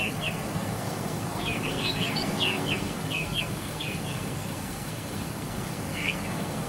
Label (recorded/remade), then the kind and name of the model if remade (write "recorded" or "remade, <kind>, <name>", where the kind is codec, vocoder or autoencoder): remade, codec, SNAC